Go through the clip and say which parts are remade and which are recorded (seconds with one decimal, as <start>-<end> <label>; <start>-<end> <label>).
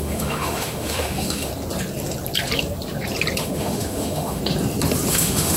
0.0-1.5 remade; 1.5-3.4 recorded; 3.4-4.4 remade; 4.4-5.1 recorded; 5.1-5.6 remade